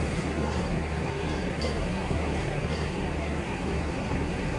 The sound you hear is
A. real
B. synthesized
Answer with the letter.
B